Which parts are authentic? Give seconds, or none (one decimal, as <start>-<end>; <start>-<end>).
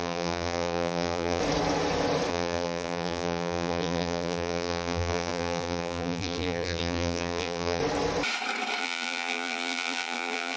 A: 1.4-2.3; 7.8-8.8